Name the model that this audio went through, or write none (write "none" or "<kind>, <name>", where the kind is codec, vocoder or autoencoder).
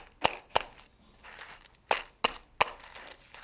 none